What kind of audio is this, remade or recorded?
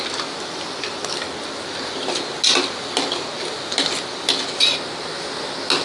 recorded